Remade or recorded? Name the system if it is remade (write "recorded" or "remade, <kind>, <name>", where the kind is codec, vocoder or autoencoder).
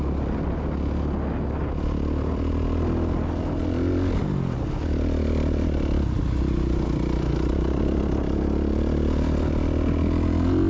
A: recorded